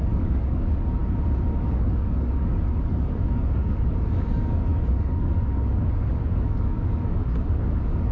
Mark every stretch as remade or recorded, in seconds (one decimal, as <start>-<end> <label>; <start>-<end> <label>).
0.0-1.0 remade; 1.0-1.6 recorded; 1.6-8.1 remade